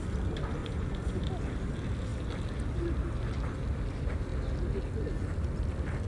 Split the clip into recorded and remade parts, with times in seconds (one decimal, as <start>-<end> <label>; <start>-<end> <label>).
0.0-0.6 recorded; 0.6-1.2 remade; 1.2-6.1 recorded